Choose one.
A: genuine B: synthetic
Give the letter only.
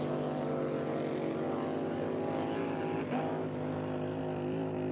A